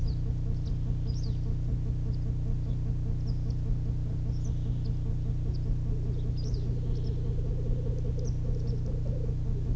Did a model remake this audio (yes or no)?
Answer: no